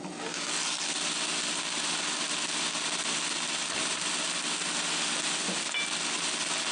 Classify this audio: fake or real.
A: real